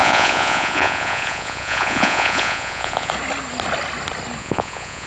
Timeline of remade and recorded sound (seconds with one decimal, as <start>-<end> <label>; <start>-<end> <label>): 0.0-3.1 remade; 3.1-4.4 recorded; 4.4-5.1 remade